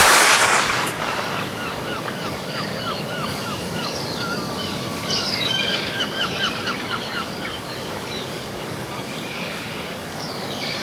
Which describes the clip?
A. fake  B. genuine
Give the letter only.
A